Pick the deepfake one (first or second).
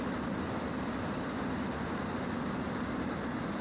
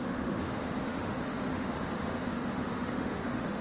second